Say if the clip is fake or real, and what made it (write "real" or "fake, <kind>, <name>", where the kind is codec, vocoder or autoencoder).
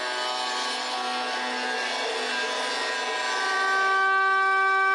real